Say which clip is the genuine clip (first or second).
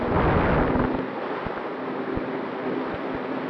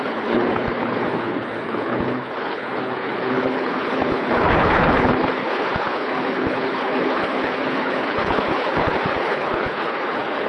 first